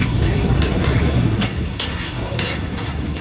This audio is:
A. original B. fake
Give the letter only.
B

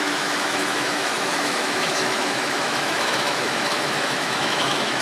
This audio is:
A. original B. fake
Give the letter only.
B